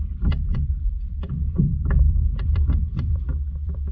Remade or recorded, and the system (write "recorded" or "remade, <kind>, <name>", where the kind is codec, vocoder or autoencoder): remade, vocoder, BigVGAN v2